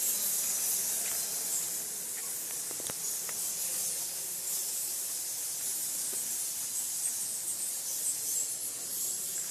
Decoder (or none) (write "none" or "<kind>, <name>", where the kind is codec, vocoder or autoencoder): none